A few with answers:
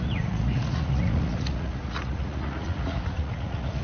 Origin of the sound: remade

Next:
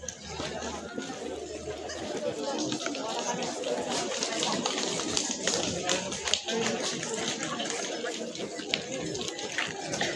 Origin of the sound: recorded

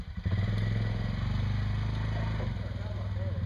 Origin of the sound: recorded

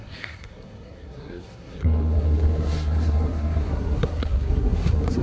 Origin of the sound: remade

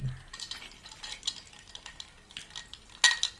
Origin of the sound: recorded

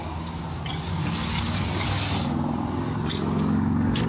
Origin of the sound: recorded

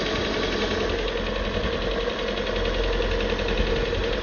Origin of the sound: recorded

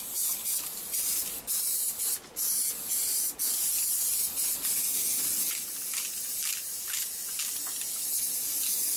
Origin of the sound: recorded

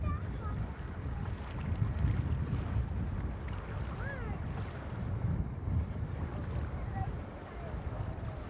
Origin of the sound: recorded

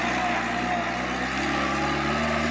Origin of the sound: recorded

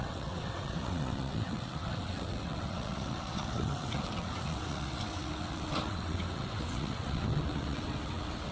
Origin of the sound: remade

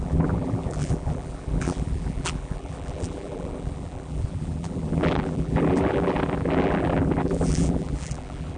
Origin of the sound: remade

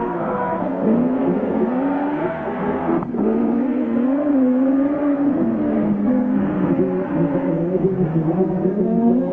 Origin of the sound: remade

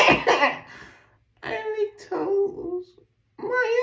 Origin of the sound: recorded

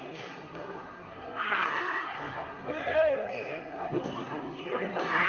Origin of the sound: remade